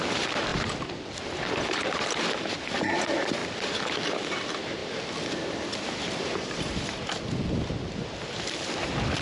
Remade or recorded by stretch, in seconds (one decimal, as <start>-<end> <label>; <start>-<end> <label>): 0.0-0.5 remade; 0.5-1.1 recorded; 1.1-3.4 remade; 3.4-4.3 recorded; 4.3-4.8 remade; 4.8-6.0 recorded; 6.0-9.2 remade